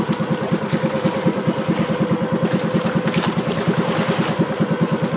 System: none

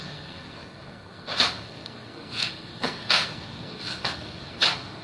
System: codec, SNAC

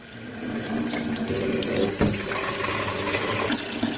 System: none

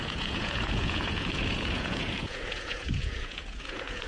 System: vocoder, Vocos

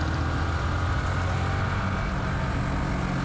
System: none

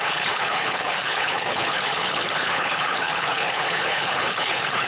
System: codec, HILCodec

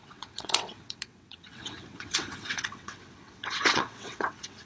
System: vocoder, WaveNeXt